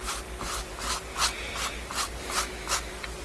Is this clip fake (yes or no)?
no